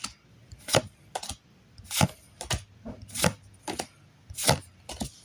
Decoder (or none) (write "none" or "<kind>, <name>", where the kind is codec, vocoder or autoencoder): none